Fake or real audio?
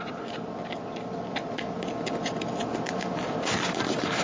real